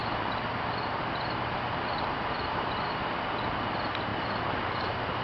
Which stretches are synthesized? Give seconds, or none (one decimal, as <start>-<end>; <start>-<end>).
0.0-2.7; 4.1-5.2